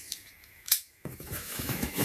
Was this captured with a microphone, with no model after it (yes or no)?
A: no